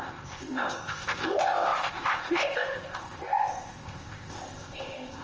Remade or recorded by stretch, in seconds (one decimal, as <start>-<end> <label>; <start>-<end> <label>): 0.0-5.2 remade